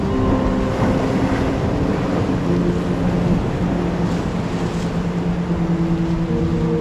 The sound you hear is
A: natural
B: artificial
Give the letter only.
A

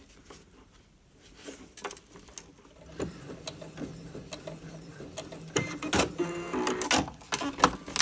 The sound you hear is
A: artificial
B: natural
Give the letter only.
B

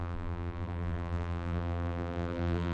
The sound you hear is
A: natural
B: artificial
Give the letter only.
B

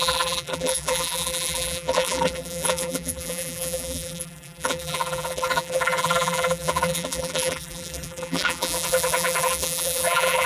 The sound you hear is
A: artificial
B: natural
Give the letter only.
A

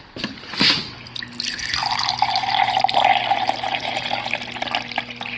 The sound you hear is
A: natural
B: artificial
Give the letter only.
A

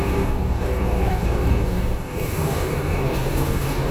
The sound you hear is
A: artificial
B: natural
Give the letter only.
A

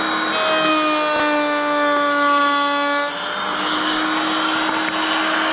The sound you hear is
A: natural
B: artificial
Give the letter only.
A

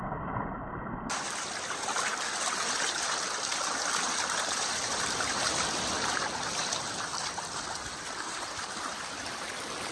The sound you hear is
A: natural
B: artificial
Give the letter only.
B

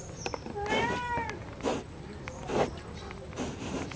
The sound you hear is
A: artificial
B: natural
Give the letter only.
B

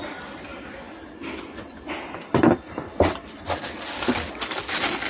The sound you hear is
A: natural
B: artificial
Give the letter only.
A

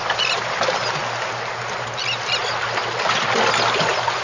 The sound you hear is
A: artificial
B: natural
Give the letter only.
B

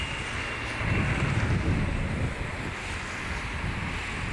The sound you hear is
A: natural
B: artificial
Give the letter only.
A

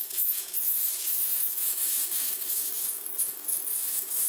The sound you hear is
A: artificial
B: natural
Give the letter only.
A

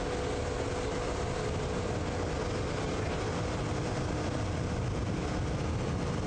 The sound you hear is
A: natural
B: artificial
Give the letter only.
A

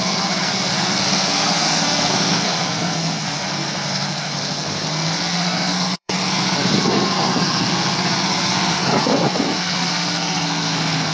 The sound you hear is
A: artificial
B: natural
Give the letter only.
A